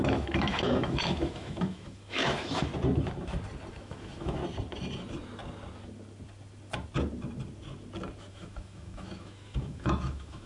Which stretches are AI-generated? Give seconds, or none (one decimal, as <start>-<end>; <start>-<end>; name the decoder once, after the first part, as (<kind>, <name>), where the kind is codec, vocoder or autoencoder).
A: 0.0-2.7 (autoencoder, DAC-VAE); 3.7-4.4; 8.3-10.5